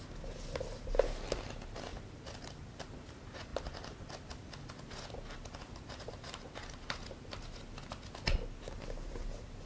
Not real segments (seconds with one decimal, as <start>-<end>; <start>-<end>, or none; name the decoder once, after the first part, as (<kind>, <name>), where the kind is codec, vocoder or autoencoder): none

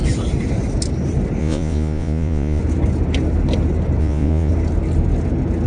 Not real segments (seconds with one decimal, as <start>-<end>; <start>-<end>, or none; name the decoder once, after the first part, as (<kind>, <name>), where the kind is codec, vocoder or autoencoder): 1.4-2.6 (vocoder, Vocos); 4.0-4.5

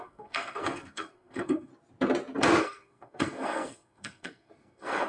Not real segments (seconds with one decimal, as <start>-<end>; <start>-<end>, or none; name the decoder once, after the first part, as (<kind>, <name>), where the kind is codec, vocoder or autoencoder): 0.0-1.7 (codec, SNAC); 2.6-5.1

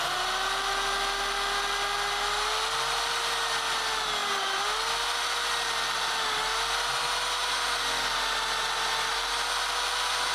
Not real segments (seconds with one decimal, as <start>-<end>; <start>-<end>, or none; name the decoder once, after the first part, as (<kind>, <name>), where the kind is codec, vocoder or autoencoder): none

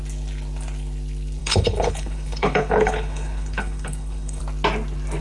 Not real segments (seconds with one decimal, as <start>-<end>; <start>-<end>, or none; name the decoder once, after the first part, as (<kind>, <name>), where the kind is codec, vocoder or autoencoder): 1.4-4.4 (codec, HILCodec)

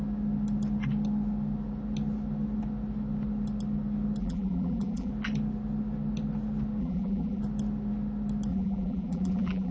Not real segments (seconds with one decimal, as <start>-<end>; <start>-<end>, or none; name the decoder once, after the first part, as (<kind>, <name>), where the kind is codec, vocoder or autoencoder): 4.2-5.1 (vocoder, BigVGAN v2); 6.8-7.4; 8.5-9.7

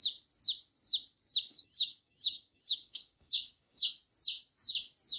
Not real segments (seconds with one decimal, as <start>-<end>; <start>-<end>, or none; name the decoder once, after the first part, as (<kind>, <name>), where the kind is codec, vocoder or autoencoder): 1.5-3.9 (codec, DAC)

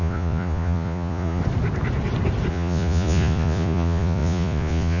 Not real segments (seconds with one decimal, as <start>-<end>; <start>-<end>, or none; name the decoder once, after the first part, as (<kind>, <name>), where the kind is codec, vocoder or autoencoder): 0.0-1.4 (vocoder, Vocos); 2.5-5.0